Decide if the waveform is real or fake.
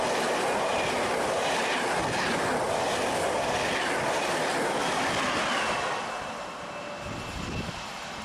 real